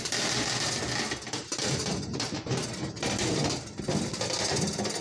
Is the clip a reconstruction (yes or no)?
no